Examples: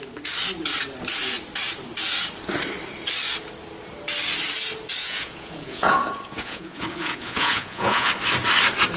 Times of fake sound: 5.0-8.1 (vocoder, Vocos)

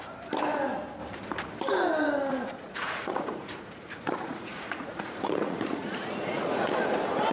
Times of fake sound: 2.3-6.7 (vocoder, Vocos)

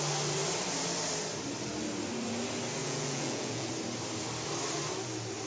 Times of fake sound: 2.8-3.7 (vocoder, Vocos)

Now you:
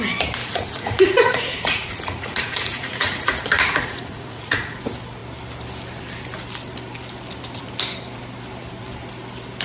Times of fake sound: 0.4-4.8 (vocoder, Vocos)

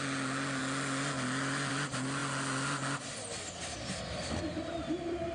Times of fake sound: none